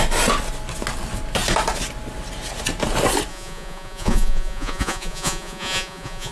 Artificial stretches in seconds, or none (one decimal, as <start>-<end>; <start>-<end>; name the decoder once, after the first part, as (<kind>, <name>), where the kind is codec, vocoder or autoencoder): 3.3-6.3 (vocoder, Vocos)